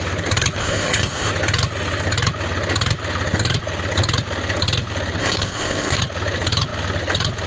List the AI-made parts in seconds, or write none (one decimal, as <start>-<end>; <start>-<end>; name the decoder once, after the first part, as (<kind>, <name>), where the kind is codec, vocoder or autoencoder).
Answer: 0.6-1.3 (codec, ZipCodec); 5.2-6.0